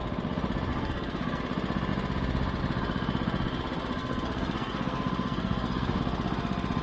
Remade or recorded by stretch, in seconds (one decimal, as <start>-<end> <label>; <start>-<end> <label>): 0.0-0.7 recorded; 0.7-1.4 remade; 1.4-4.0 recorded; 4.0-6.0 remade; 6.0-6.8 recorded